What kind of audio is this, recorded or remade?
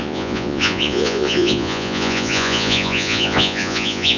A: remade